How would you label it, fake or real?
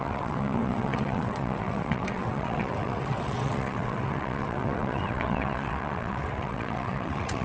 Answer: fake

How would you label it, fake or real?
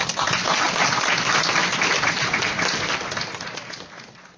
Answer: real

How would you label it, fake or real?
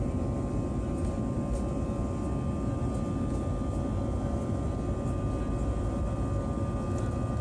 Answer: real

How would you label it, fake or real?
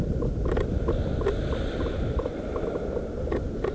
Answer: real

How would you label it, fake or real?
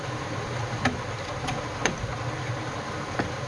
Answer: real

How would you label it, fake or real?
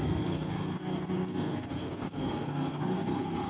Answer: fake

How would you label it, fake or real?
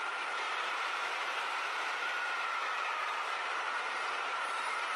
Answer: fake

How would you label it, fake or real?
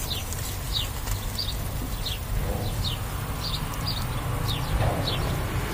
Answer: real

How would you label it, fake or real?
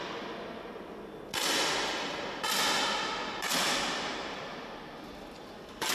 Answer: real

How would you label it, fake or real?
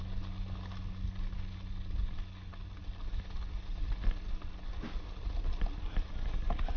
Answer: real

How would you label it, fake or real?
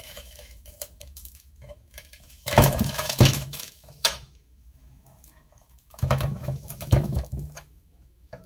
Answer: fake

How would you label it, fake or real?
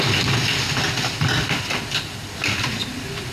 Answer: real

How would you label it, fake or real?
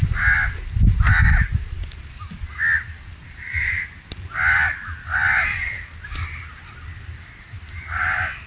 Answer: real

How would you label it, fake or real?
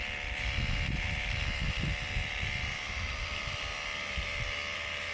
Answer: fake